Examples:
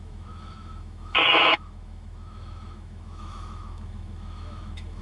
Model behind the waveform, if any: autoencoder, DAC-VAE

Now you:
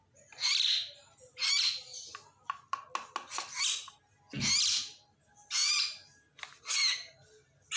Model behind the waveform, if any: none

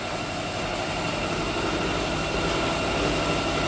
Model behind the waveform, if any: none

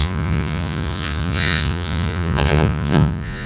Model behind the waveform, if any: vocoder, Vocos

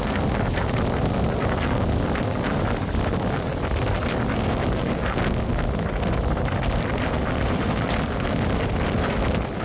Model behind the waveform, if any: none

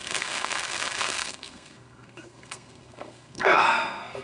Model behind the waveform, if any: codec, SNAC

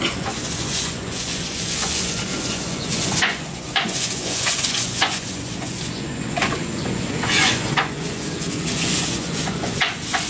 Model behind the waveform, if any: vocoder, Vocos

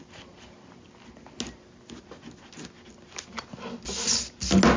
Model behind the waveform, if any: none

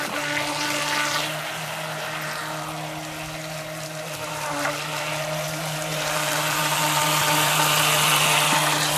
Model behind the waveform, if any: none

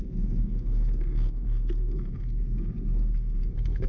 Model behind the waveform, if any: codec, SNAC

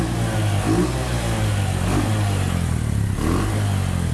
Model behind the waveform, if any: none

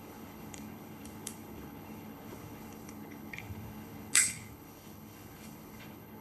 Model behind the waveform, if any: codec, HILCodec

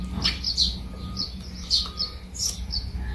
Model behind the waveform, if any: none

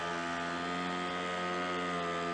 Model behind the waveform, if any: none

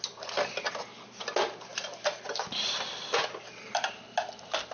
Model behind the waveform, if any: none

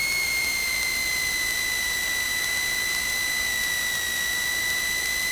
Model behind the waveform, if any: vocoder, BigVGAN v2